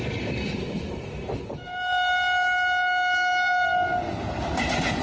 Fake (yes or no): no